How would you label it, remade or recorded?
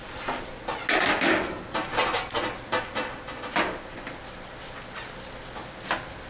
recorded